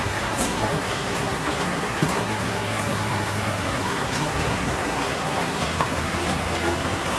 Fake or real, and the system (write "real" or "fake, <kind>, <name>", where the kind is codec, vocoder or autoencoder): fake, codec, SNAC